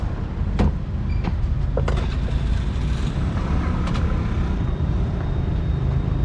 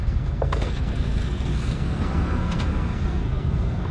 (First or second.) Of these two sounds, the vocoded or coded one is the second